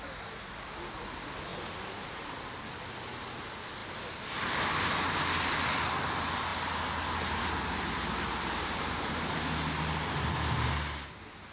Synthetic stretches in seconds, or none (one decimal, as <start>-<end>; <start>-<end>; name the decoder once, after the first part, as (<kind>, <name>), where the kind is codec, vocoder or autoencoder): none